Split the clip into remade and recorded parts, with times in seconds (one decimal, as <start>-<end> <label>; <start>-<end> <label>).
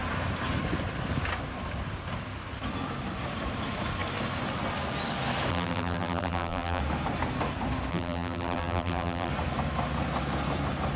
0.0-5.5 recorded; 5.5-6.8 remade; 6.8-7.9 recorded; 7.9-9.3 remade; 9.3-11.0 recorded